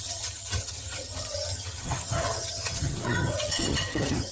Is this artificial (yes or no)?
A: yes